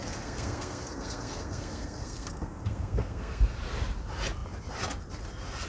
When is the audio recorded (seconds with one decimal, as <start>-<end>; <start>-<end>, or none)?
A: 3.4-5.7